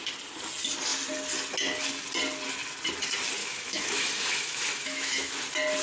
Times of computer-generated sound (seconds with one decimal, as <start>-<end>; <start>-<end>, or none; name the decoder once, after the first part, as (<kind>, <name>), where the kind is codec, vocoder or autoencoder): 3.4-5.3 (autoencoder, DAC-VAE)